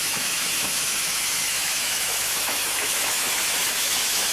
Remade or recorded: remade